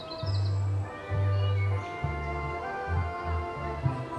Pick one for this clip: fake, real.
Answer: real